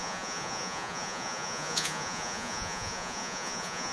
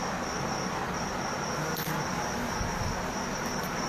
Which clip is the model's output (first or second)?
first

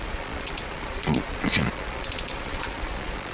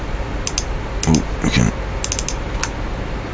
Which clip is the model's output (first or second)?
first